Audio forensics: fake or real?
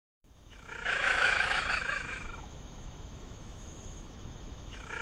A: fake